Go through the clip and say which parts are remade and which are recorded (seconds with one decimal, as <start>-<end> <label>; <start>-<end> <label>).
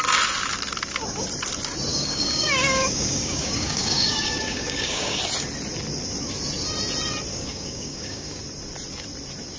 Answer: 0.0-1.9 recorded; 1.9-5.2 remade; 5.2-7.3 recorded; 7.3-8.4 remade; 8.4-9.6 recorded